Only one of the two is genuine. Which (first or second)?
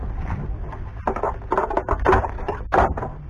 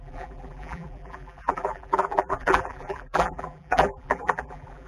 first